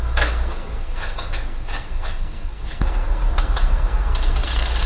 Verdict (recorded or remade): remade